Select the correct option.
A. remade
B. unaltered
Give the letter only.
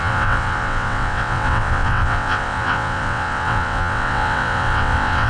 A